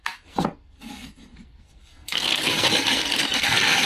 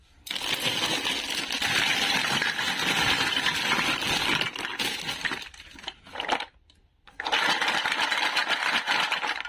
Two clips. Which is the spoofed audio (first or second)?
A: first